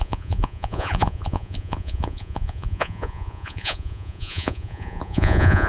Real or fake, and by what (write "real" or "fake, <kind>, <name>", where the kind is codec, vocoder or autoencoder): fake, vocoder, Vocos